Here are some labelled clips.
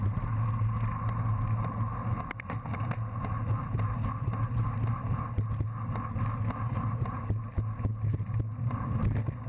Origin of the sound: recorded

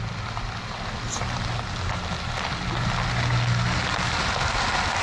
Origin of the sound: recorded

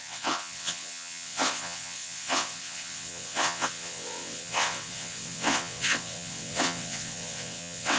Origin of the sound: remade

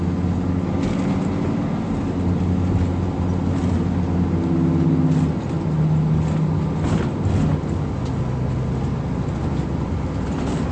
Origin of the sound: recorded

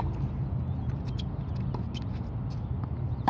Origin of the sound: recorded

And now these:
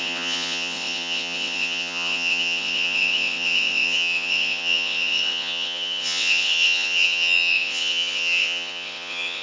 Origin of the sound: remade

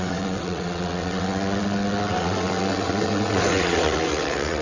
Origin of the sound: remade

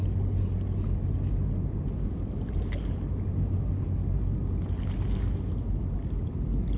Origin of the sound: recorded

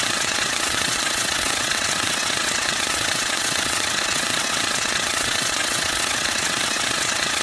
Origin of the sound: remade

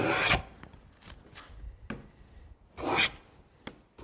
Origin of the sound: recorded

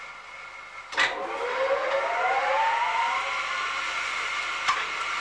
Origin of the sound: recorded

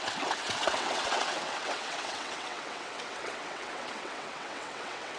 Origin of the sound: remade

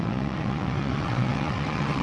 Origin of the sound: remade